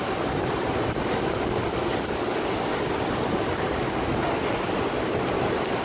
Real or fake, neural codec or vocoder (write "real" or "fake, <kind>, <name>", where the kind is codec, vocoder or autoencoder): real